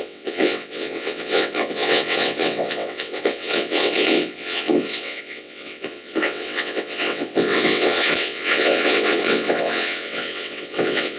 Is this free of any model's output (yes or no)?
no